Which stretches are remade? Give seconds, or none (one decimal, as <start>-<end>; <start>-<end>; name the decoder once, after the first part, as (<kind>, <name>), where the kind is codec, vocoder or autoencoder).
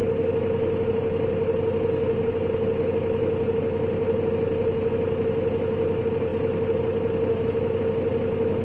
none